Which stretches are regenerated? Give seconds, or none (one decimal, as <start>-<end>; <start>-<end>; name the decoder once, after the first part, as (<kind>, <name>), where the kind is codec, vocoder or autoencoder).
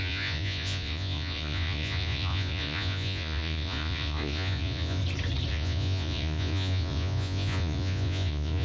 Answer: 0.0-5.0 (vocoder, Vocos); 5.5-8.6